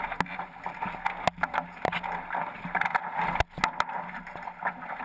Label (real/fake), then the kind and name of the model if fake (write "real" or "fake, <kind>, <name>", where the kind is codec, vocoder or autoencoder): real